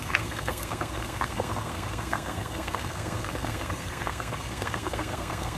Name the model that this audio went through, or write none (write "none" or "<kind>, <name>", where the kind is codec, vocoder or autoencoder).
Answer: codec, SNAC